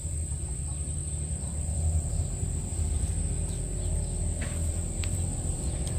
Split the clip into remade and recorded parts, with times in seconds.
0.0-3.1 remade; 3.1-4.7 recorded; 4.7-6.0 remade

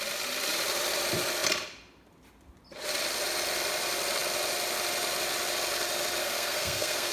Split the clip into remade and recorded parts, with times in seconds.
0.0-6.2 recorded; 6.2-7.1 remade

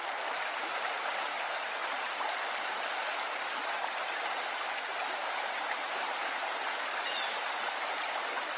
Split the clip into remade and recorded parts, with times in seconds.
0.0-5.2 recorded; 5.2-6.2 remade; 6.2-8.6 recorded

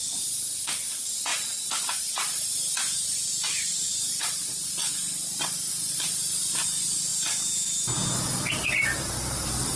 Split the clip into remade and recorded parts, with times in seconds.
0.0-4.8 remade; 4.8-5.7 recorded; 5.7-7.1 remade; 7.1-8.4 recorded; 8.4-9.8 remade

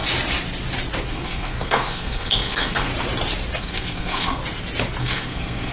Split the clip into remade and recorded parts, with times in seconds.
0.0-1.1 recorded; 1.1-2.9 remade; 2.9-3.6 recorded; 3.6-4.4 remade; 4.4-5.0 recorded; 5.0-5.7 remade

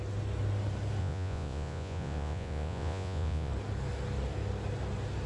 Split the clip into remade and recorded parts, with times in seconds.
0.0-1.0 recorded; 1.0-3.5 remade; 3.5-5.3 recorded

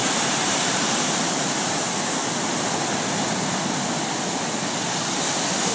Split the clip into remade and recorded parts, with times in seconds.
0.0-1.4 recorded; 1.4-2.2 remade; 2.2-5.7 recorded

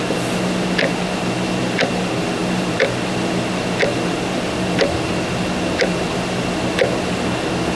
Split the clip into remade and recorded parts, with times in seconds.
0.0-7.8 recorded